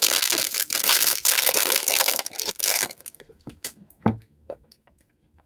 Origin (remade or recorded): remade